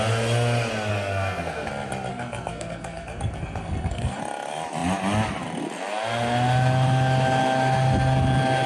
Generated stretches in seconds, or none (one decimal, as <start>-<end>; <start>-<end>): 0.9-1.7; 2.1-4.2